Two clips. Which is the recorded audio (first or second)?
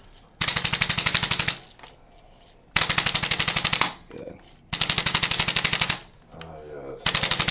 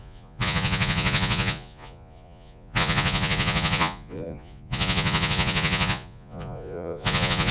first